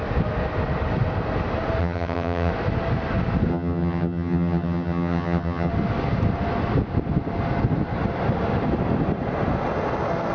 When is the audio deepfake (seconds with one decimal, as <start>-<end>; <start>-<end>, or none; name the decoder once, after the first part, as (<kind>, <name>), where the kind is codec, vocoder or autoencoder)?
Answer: 1.8-2.5 (vocoder, HiFi-GAN); 3.5-5.7